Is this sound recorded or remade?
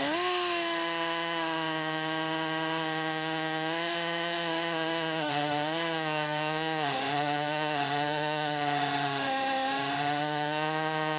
remade